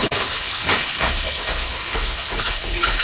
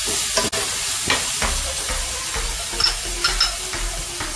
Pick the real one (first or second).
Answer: second